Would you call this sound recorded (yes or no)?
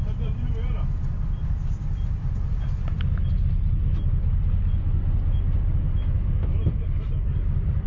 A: no